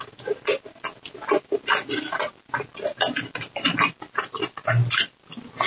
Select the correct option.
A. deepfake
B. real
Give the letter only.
B